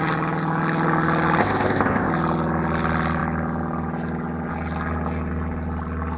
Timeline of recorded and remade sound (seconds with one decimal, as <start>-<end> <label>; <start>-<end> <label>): 0.0-1.4 recorded; 1.4-2.1 remade; 2.1-6.2 recorded